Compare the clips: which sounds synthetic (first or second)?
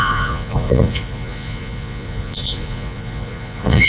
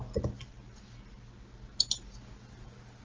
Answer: first